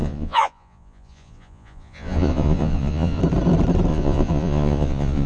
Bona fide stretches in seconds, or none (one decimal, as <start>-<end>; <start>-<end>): 3.2-3.9